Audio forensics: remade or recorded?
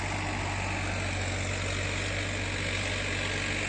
recorded